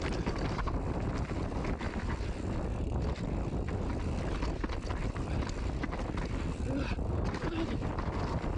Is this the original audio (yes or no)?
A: yes